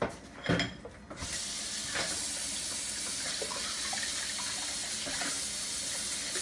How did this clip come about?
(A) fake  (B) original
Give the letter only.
B